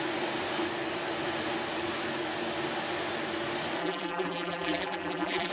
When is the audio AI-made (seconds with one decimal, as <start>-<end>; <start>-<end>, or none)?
3.8-5.5